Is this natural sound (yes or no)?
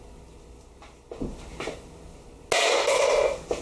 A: yes